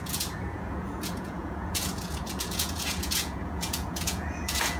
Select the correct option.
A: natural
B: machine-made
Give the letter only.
B